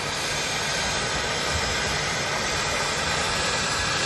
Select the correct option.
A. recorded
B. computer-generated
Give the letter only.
A